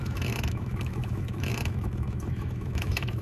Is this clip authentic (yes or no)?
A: no